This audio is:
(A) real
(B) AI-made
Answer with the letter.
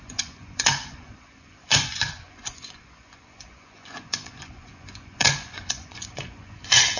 B